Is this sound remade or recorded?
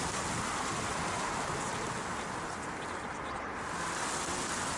recorded